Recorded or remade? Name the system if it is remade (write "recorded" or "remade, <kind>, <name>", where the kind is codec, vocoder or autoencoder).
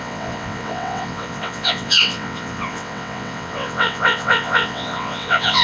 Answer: remade, vocoder, WaveNeXt